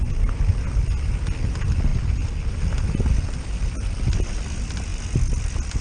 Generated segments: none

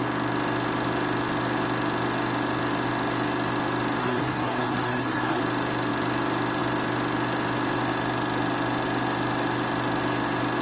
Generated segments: 4.0-5.4 (codec, SNAC)

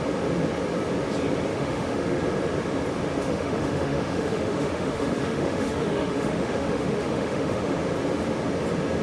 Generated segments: 1.5-2.2 (autoencoder, DAC-VAE); 3.2-7.8

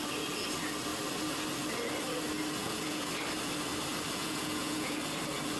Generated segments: 2.6-3.1 (vocoder, Vocos); 4.2-5.0

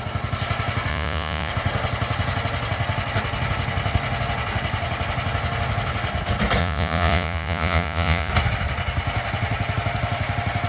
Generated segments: 0.9-1.5 (vocoder, Vocos); 6.6-8.3

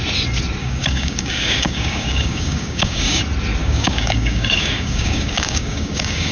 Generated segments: 0.6-3.2 (codec, DAC); 3.6-6.3